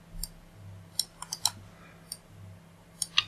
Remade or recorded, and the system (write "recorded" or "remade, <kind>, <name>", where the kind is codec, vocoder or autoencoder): recorded